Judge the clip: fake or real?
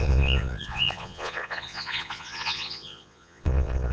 fake